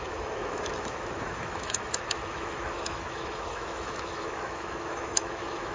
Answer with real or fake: fake